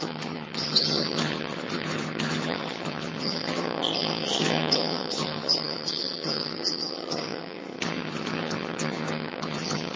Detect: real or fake fake